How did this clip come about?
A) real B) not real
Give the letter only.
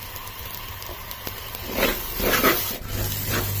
B